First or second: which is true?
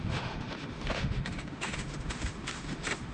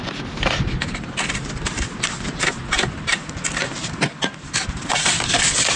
second